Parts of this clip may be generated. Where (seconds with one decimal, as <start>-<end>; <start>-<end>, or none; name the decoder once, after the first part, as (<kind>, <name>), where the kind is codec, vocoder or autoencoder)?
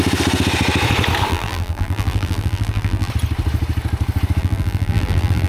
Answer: 1.3-3.1 (vocoder, BigVGAN v2); 4.4-5.5